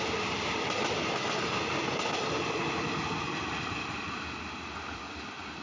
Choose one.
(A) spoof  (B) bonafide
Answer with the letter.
B